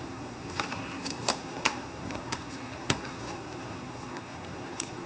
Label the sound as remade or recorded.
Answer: remade